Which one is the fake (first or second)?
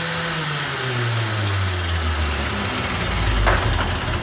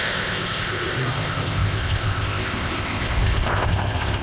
second